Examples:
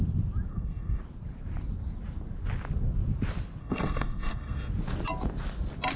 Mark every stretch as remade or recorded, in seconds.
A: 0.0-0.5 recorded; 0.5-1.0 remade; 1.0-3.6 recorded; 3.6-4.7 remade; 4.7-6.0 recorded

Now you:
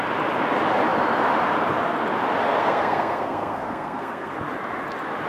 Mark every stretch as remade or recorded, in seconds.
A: 0.0-2.6 recorded; 2.6-4.3 remade; 4.3-5.3 recorded

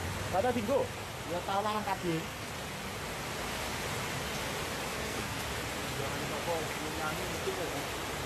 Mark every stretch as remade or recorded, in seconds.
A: 0.0-1.5 recorded; 1.5-2.5 remade; 2.5-4.9 recorded; 4.9-5.4 remade; 5.4-8.3 recorded

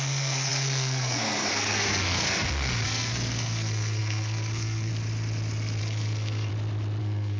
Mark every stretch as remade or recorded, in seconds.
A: 0.0-4.9 remade; 4.9-5.8 recorded; 5.8-6.5 remade; 6.5-7.0 recorded; 7.0-7.4 remade

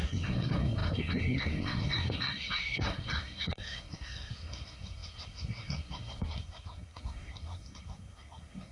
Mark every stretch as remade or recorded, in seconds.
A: 0.0-8.7 remade